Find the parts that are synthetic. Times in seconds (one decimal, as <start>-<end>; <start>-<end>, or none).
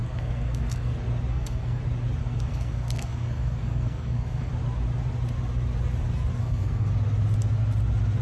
0.0-0.9; 1.3-1.8; 2.2-4.5; 6.4-6.9